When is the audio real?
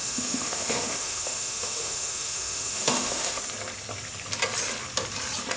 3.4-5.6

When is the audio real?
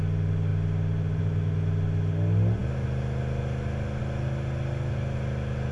0.0-5.7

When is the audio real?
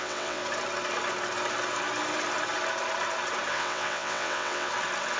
0.4-3.5; 4.7-5.2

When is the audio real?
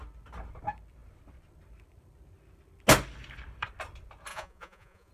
0.0-4.3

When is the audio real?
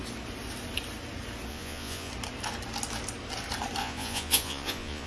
0.0-1.5; 2.1-3.8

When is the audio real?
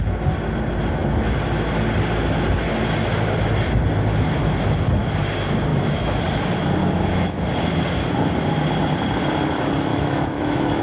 0.0-5.7; 6.2-6.8; 7.4-9.9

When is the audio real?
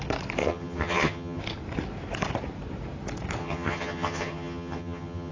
0.0-0.4; 1.4-3.4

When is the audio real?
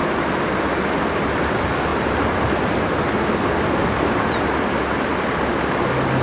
0.0-6.2